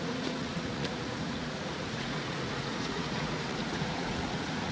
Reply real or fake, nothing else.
fake